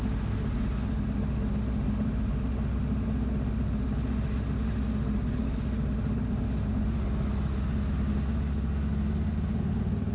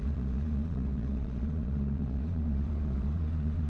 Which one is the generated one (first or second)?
second